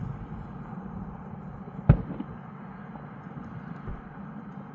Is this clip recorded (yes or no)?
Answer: yes